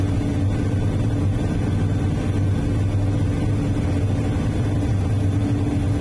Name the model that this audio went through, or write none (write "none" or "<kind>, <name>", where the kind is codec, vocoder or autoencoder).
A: none